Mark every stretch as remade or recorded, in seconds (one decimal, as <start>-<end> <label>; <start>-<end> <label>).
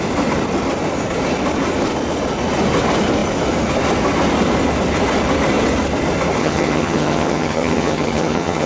0.0-6.4 recorded; 6.4-8.7 remade